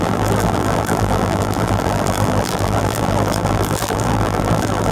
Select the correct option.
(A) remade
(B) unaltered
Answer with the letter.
A